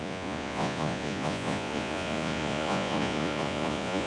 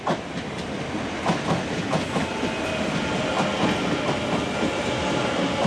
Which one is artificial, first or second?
first